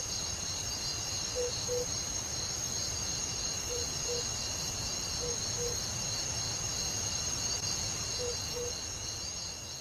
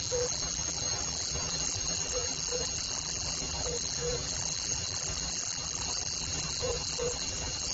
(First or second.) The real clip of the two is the first